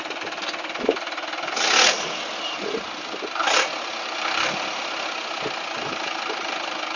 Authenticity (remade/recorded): recorded